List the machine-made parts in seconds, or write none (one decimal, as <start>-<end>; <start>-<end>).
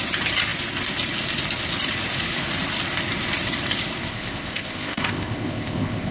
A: 4.1-6.1